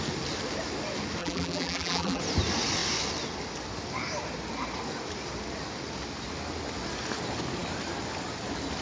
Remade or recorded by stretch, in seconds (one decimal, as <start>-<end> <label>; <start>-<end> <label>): 0.0-1.2 recorded; 1.2-2.2 remade; 2.2-8.8 recorded